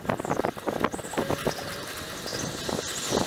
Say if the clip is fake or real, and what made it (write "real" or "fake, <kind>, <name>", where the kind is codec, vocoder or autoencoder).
real